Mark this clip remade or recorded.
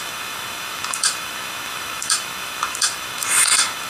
remade